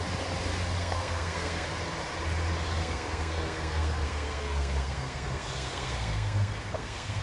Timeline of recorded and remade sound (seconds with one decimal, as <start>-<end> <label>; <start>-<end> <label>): 0.0-0.8 recorded; 0.8-1.7 remade; 1.7-2.8 recorded; 2.8-7.2 remade